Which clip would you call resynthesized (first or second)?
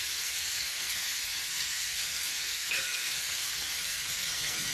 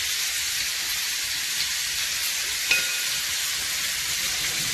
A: first